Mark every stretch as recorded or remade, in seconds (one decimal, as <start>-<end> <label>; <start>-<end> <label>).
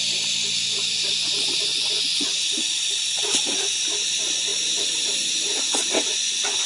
0.0-1.7 recorded; 1.7-2.5 remade; 2.5-6.1 recorded; 6.1-6.7 remade